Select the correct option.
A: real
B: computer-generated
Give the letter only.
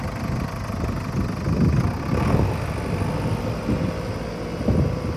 A